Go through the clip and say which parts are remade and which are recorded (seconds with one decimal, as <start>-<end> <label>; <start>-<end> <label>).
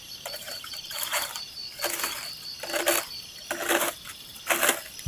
0.0-1.6 remade; 1.6-5.1 recorded